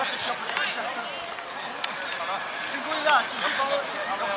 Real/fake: real